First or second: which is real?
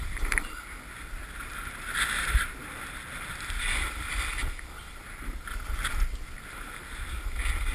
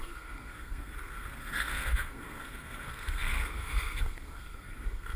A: first